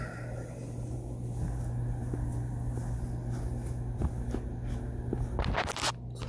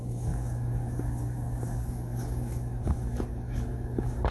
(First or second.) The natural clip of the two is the first